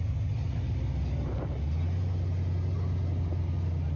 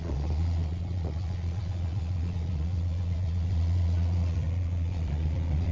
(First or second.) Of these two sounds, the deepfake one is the second